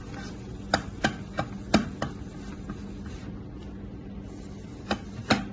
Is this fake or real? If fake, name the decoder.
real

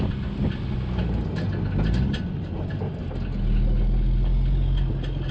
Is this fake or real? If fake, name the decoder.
real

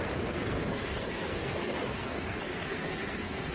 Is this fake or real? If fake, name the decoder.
fake, codec, SNAC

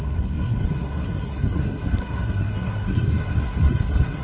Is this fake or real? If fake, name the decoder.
fake, codec, SNAC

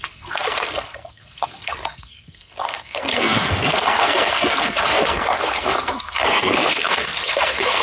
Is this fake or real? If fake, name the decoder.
fake, codec, SNAC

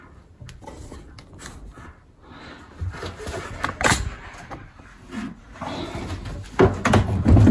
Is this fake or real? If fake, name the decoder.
real